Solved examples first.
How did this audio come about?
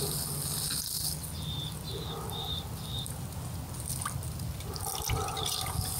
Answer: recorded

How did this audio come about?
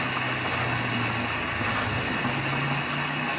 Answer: recorded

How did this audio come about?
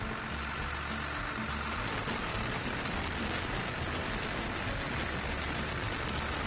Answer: recorded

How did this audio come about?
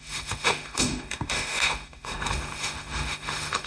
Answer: remade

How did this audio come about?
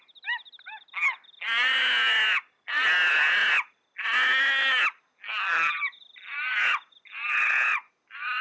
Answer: recorded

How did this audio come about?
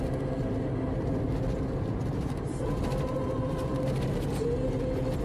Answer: recorded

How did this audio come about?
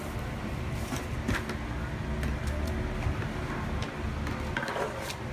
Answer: recorded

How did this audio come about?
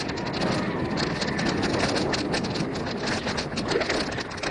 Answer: recorded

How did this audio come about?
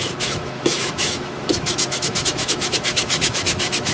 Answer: remade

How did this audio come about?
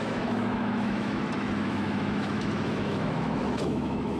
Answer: remade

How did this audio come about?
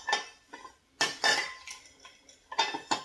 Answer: recorded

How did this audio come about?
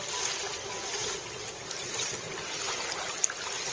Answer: recorded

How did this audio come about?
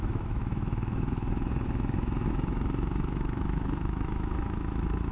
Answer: remade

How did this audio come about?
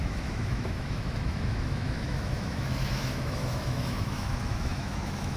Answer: remade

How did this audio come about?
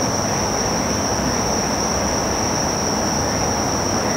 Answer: recorded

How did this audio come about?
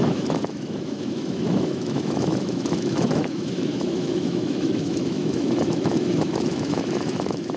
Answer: remade